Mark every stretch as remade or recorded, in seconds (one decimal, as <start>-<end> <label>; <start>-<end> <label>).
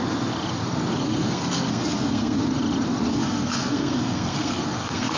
0.0-1.0 recorded; 1.0-2.4 remade; 2.4-3.1 recorded; 3.1-5.2 remade